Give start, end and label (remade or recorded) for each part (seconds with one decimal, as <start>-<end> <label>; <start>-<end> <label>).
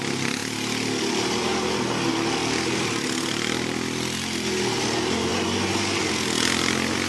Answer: 0.0-2.4 recorded; 2.4-2.9 remade; 2.9-7.1 recorded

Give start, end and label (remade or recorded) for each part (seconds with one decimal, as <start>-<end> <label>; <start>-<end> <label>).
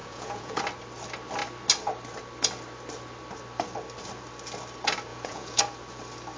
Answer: 0.0-0.6 remade; 0.6-5.1 recorded; 5.1-5.6 remade; 5.6-6.4 recorded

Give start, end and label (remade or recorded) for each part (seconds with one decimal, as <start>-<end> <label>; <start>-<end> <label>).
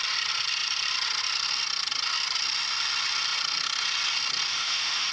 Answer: 0.0-4.5 recorded; 4.5-5.1 remade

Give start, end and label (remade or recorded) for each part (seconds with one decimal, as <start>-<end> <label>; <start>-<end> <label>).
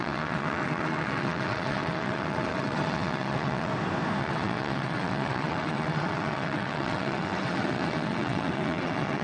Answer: 0.0-3.7 remade; 3.7-4.2 recorded; 4.2-9.2 remade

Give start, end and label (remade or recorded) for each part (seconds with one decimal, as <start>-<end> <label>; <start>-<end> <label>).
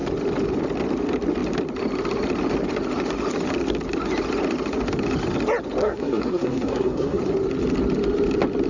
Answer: 0.0-5.8 recorded; 5.8-7.2 remade; 7.2-8.7 recorded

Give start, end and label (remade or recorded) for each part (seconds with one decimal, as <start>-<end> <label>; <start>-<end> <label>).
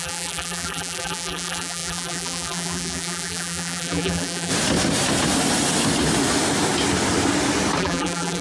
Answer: 0.0-4.5 remade; 4.5-7.8 recorded; 7.8-8.4 remade